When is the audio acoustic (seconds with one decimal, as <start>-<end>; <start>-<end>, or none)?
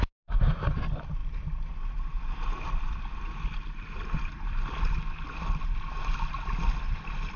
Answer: 0.0-7.4